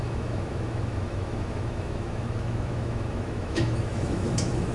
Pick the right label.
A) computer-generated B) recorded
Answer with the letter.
A